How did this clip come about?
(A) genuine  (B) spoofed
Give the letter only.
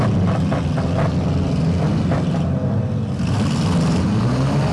A